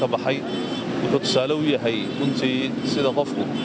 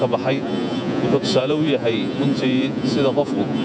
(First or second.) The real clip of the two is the first